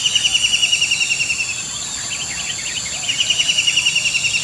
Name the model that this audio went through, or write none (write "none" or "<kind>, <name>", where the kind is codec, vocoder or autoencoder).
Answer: none